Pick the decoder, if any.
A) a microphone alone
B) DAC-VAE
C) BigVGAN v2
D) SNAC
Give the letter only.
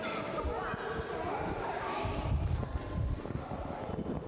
A